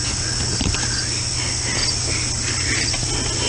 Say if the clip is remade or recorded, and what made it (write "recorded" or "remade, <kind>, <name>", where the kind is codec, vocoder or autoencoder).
recorded